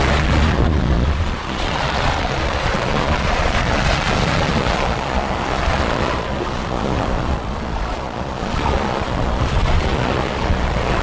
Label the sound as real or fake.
fake